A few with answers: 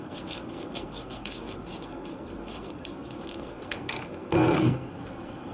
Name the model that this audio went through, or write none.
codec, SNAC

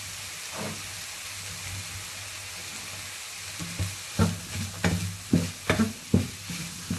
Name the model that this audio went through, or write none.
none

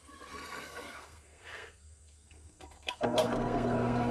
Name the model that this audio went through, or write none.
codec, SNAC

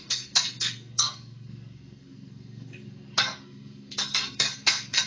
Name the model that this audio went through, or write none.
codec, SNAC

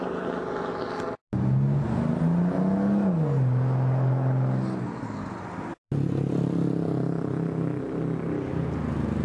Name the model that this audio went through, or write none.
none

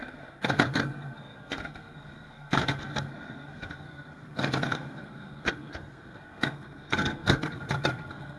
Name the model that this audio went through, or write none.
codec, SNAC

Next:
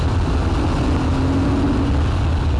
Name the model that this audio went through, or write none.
none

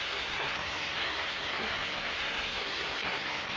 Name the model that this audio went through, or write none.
codec, SNAC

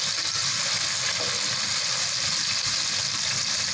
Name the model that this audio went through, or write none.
none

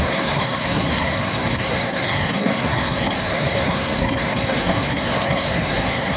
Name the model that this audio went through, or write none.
codec, SNAC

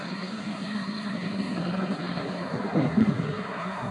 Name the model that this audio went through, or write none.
codec, SNAC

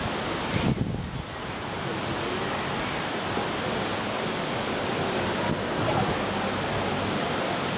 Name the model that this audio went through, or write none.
none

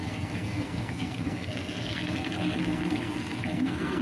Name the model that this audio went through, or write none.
codec, SNAC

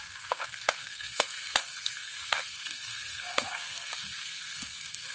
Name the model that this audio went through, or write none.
codec, SNAC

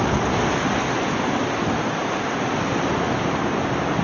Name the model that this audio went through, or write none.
none